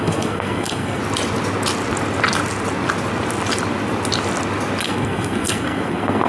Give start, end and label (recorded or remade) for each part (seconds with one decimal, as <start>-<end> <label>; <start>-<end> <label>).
0.0-1.0 remade; 1.0-4.8 recorded; 4.8-6.3 remade